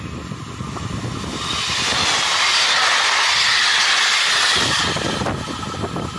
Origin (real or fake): real